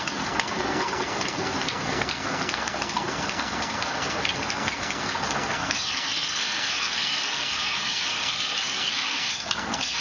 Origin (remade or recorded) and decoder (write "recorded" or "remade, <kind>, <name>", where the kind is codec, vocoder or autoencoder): remade, codec, SNAC